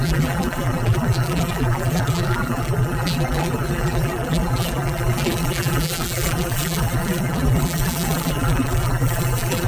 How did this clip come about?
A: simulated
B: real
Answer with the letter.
A